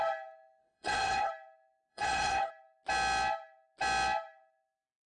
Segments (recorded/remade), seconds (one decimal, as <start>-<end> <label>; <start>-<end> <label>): 0.0-0.6 recorded; 0.6-1.3 remade; 1.3-1.9 recorded; 1.9-2.5 remade; 2.5-5.1 recorded